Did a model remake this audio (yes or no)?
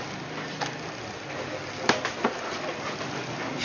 no